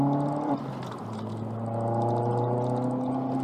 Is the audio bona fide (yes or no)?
yes